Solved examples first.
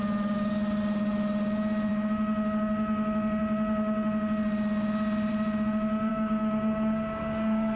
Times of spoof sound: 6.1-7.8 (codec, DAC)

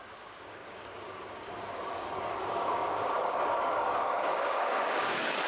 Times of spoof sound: 0.0-5.5 (codec, DAC)